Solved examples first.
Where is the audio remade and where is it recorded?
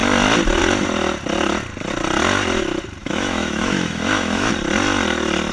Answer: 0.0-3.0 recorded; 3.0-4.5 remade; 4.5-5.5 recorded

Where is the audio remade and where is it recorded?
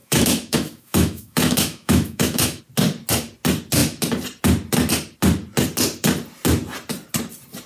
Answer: 0.0-2.6 remade; 2.6-7.7 recorded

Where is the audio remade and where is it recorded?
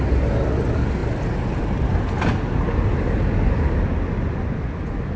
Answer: 0.0-5.2 recorded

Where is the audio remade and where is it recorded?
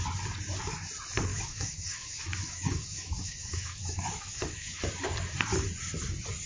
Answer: 0.0-1.3 recorded; 1.3-4.8 remade; 4.8-6.5 recorded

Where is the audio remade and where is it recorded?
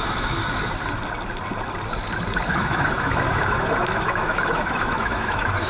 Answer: 0.0-0.4 remade; 0.4-2.5 recorded; 2.5-5.7 remade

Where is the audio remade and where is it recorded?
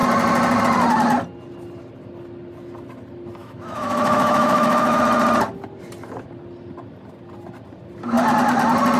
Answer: 0.0-3.4 recorded; 3.4-5.0 remade; 5.0-9.0 recorded